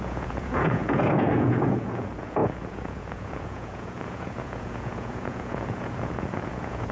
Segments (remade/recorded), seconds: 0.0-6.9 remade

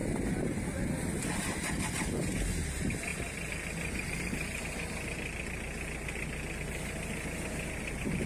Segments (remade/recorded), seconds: 0.0-8.3 recorded

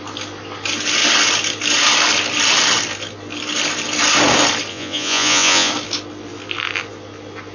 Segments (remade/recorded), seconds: 0.0-4.7 recorded; 4.7-5.7 remade; 5.7-7.5 recorded

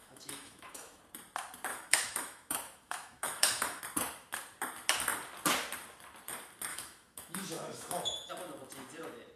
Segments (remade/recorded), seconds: 0.0-1.0 remade; 1.0-1.7 recorded; 1.7-3.8 remade; 3.8-6.7 recorded; 6.7-8.3 remade; 8.3-9.4 recorded

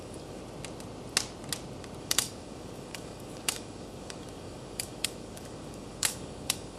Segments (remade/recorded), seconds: 0.0-0.4 remade; 0.4-2.0 recorded; 2.0-6.8 remade

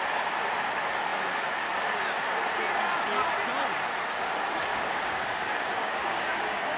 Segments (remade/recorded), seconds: 0.0-4.7 recorded; 4.7-6.8 remade